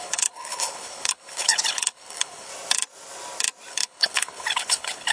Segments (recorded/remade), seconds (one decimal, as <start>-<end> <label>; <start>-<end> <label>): 0.0-2.5 remade; 2.5-3.7 recorded; 3.7-5.1 remade